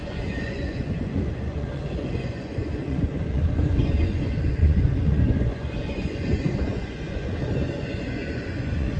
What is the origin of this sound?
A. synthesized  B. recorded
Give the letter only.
A